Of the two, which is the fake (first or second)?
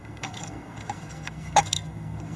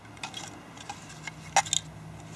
first